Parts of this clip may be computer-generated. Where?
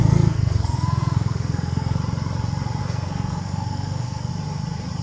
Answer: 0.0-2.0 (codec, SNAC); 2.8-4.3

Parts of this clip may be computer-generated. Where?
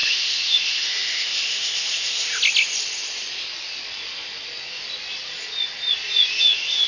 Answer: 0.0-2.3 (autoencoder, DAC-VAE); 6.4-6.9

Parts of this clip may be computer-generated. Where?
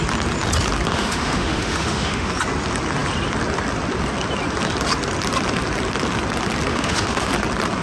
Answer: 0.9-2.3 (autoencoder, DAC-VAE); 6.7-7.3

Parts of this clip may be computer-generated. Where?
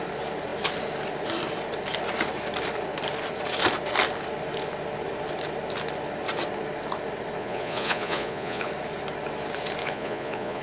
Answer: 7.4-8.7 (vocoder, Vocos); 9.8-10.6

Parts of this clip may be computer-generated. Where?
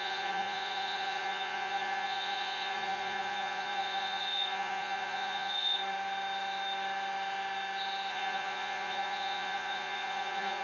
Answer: 0.0-5.8 (vocoder, Vocos); 8.1-10.6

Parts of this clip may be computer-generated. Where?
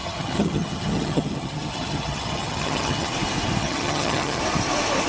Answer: 0.0-3.1 (vocoder, HiFi-GAN); 3.6-4.4